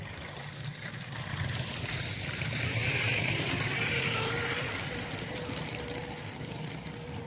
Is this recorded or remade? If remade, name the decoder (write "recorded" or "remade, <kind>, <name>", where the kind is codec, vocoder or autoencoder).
remade, vocoder, BigVGAN v2